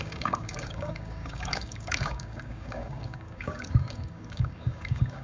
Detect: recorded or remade remade